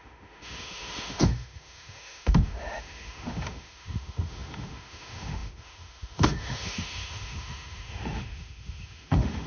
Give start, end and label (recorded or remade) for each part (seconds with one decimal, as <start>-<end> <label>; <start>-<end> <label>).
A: 0.0-9.5 remade